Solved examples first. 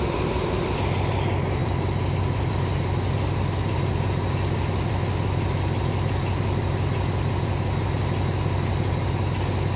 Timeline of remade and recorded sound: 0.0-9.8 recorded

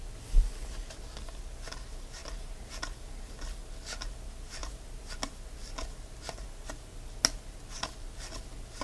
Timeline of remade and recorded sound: 0.0-8.8 recorded

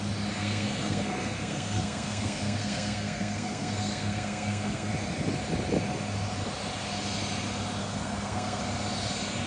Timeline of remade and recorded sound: 0.0-0.4 recorded; 0.4-4.9 remade; 4.9-7.8 recorded; 7.8-8.6 remade; 8.6-9.5 recorded

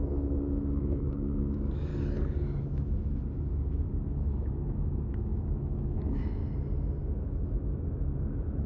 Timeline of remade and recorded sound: 0.0-1.9 remade; 1.9-2.6 recorded; 2.6-6.4 remade; 6.4-7.2 recorded; 7.2-8.7 remade